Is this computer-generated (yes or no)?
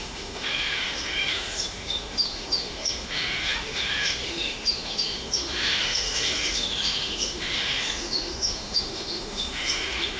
yes